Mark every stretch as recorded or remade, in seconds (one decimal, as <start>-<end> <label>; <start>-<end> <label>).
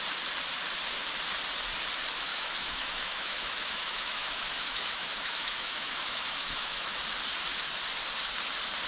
0.0-2.3 recorded; 2.3-7.0 remade; 7.0-8.9 recorded